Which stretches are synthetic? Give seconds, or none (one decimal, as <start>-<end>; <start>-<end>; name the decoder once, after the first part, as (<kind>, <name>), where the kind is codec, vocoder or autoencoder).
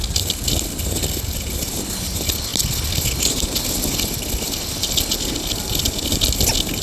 none